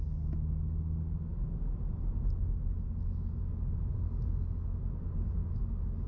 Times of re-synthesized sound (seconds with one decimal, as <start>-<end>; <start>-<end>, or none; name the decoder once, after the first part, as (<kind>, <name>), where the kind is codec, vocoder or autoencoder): none